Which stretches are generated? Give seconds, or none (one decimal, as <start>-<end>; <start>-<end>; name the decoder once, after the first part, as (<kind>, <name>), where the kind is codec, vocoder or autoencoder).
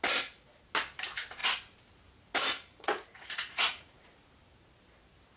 2.7-4.3 (vocoder, Vocos)